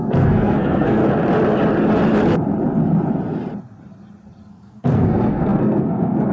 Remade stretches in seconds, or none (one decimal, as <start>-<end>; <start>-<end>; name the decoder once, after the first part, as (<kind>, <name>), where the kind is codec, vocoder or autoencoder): 0.0-1.0 (codec, SNAC); 4.5-6.3